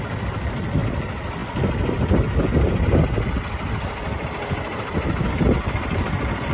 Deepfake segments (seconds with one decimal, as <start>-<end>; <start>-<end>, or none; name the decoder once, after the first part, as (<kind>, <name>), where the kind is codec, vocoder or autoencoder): none